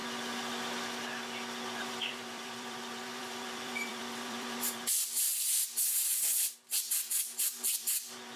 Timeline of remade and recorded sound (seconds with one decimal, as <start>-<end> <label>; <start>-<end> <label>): 0.0-1.8 recorded; 1.8-5.3 remade; 5.3-6.1 recorded; 6.1-8.4 remade